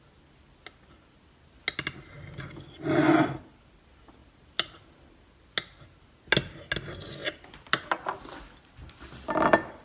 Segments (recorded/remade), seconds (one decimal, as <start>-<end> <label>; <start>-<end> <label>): 0.0-4.2 recorded; 4.2-5.1 remade; 5.1-7.2 recorded; 7.2-7.8 remade; 7.8-9.8 recorded